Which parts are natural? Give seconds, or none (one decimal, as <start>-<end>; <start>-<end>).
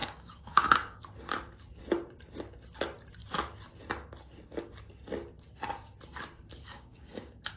1.0-6.6